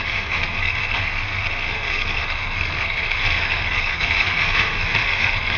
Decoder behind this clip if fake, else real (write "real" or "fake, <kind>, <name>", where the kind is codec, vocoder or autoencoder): fake, codec, SNAC